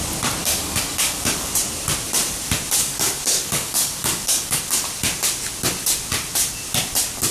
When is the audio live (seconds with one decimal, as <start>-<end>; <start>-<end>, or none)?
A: 0.0-0.4; 1.5-2.8; 4.6-7.3